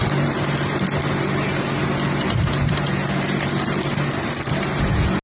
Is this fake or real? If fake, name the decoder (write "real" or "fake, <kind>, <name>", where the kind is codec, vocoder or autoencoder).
real